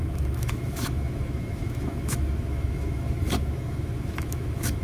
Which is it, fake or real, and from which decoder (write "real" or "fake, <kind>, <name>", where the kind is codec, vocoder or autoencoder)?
fake, autoencoder, DAC-VAE